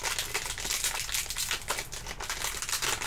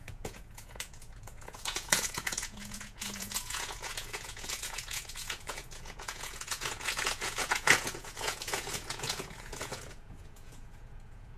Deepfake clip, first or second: second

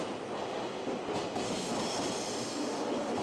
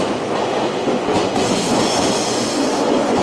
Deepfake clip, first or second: second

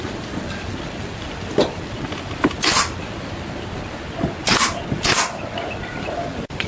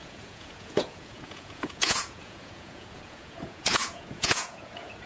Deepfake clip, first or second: second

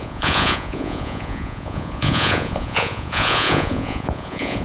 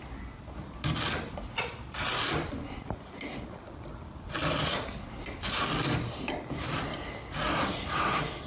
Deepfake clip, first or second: first